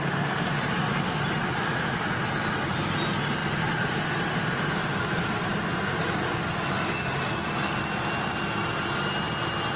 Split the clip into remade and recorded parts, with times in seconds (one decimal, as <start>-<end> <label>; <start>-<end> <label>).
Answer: 0.0-3.4 recorded; 3.4-6.3 remade; 6.3-9.8 recorded